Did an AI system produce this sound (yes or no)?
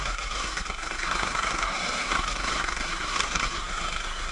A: yes